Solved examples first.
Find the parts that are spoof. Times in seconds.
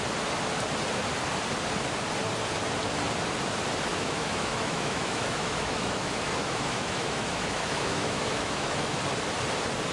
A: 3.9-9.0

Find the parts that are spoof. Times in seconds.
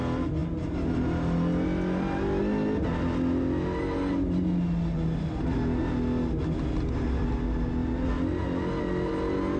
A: none